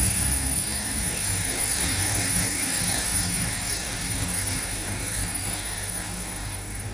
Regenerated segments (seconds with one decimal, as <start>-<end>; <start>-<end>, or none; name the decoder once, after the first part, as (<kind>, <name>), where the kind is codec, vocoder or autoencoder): 0.0-6.9 (codec, DAC)